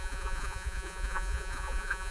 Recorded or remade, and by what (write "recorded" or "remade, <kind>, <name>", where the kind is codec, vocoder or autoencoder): remade, vocoder, Vocos